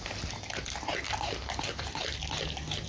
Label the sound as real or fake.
real